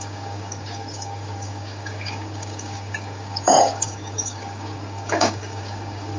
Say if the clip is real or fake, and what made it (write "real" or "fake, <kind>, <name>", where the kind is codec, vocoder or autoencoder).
fake, codec, DAC